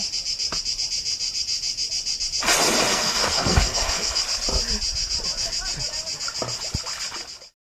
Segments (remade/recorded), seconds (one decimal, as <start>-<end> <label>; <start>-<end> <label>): 0.0-2.9 recorded; 2.9-4.2 remade; 4.2-7.7 recorded